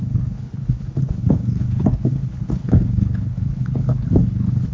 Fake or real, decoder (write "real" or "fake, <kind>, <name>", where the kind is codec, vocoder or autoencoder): fake, codec, HILCodec